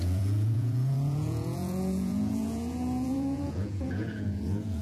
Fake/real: fake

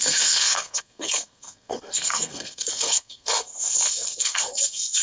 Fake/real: fake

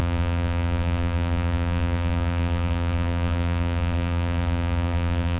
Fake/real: fake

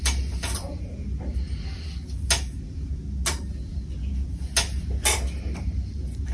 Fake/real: real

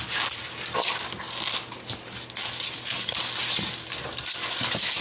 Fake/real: real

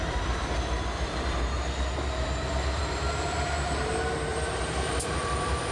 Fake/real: fake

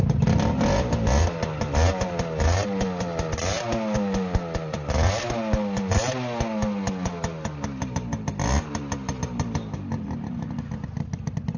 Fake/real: real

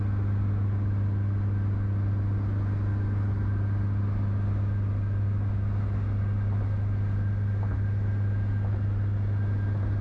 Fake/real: real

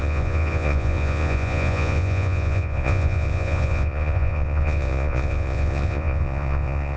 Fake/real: fake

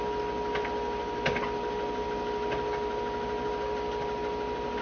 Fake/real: real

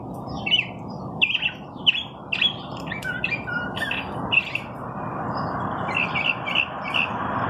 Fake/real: real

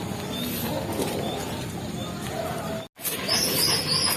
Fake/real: real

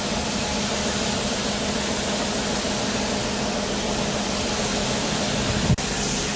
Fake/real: real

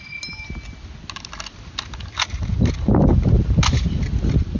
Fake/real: real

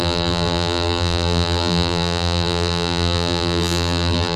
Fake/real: fake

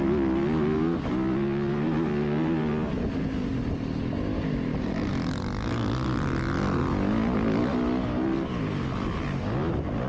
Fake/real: real